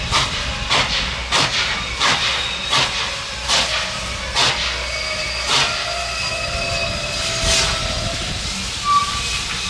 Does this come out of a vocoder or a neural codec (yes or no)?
no